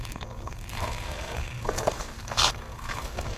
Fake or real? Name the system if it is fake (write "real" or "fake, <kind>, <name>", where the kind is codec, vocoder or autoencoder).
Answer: fake, codec, SNAC